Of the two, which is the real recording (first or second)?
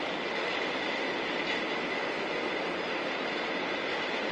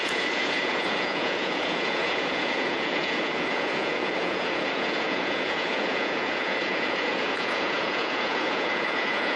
first